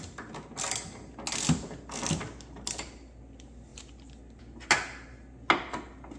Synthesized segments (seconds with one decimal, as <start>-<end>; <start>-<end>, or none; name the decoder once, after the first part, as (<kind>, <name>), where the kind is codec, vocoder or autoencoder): none